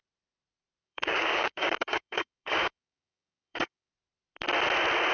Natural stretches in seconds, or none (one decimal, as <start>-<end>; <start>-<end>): 0.0-0.8; 3.9-5.1